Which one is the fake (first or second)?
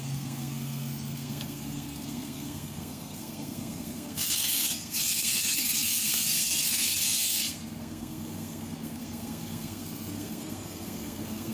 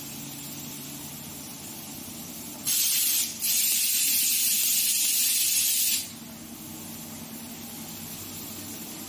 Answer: first